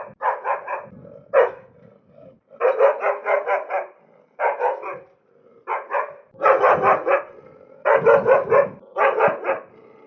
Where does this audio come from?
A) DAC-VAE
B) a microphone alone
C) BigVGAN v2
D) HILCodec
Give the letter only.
B